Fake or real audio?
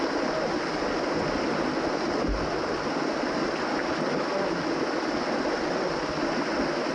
real